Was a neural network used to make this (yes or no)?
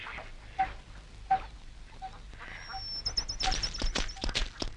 no